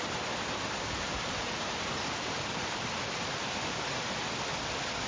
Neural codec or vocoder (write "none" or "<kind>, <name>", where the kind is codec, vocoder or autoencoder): none